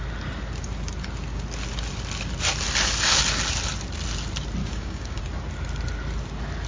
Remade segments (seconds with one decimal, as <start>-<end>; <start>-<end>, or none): 4.6-5.2